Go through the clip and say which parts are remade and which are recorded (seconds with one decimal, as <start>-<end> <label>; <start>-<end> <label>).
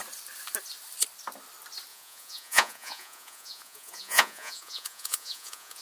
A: 0.0-1.9 recorded; 1.9-5.8 remade